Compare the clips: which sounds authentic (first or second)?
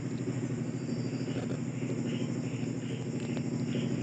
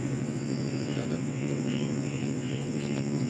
first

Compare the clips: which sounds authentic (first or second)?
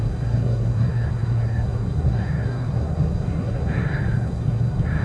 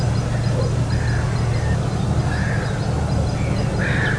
second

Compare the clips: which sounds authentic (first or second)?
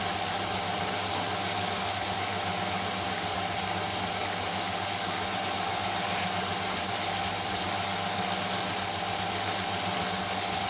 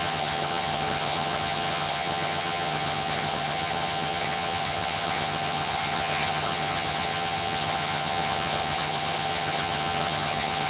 first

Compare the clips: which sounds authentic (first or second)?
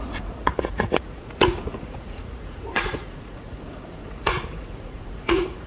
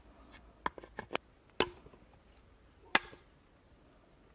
second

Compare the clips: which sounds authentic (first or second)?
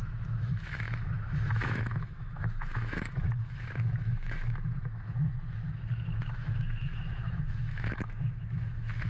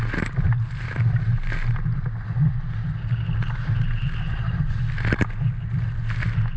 second